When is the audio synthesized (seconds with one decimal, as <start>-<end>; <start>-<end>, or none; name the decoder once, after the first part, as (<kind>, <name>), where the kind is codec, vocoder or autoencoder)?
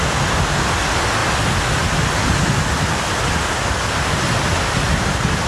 none